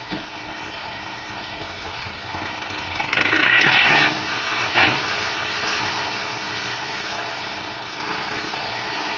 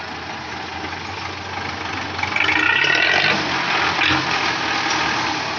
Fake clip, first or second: first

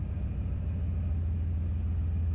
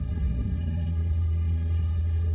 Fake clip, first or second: second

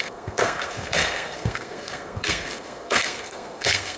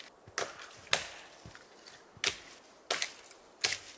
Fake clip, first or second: first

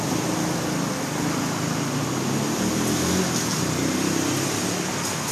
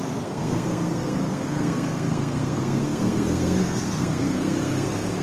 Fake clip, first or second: second